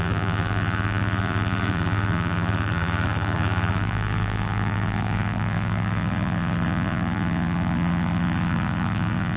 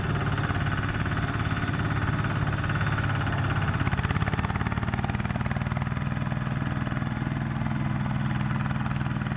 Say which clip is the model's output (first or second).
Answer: first